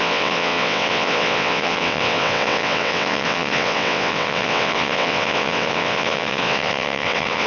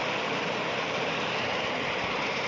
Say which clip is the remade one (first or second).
first